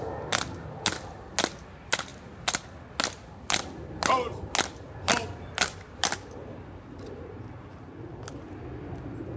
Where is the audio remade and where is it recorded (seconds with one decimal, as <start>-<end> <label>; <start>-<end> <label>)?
0.0-9.4 recorded